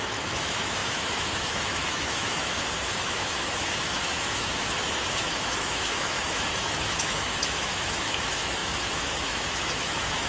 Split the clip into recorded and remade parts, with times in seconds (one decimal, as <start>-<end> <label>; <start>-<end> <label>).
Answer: 0.0-10.3 remade